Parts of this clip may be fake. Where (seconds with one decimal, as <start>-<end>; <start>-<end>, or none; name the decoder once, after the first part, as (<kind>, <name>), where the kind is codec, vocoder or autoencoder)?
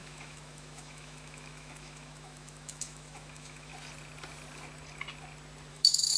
0.0-3.7 (autoencoder, DAC-VAE); 5.7-6.2